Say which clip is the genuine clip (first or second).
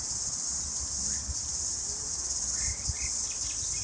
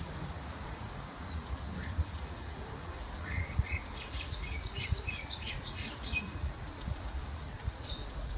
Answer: first